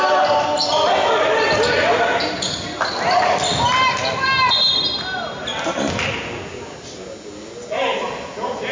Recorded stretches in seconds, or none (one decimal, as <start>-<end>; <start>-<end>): 0.0-8.7